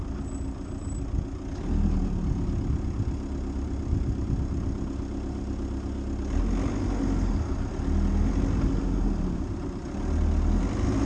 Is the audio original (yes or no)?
yes